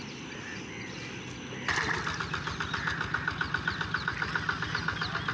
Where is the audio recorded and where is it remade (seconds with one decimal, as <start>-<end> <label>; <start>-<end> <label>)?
0.0-4.1 recorded; 4.1-4.7 remade; 4.7-5.3 recorded